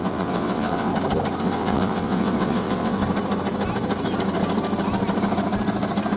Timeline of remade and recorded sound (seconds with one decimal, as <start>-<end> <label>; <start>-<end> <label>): 0.0-0.9 remade; 0.9-1.4 recorded; 1.4-3.0 remade; 3.0-6.2 recorded